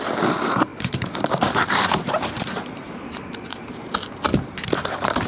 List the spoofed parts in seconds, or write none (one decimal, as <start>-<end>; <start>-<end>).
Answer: 0.7-3.9; 4.3-5.3